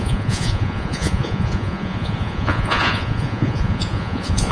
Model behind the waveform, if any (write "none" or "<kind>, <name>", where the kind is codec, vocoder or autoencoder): vocoder, Vocos